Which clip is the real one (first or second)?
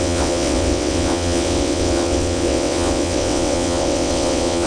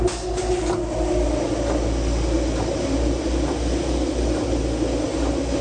second